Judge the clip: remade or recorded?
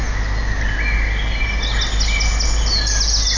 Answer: recorded